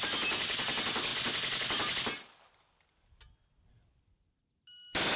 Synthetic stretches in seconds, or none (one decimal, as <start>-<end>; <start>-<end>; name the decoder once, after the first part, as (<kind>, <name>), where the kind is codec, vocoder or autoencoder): none